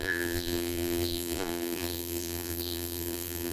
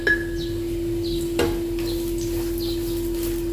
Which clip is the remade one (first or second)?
first